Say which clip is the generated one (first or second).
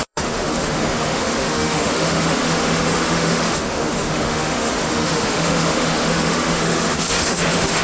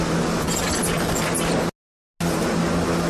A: first